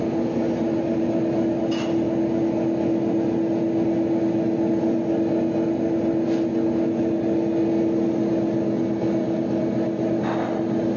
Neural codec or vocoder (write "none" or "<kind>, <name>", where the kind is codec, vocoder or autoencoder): none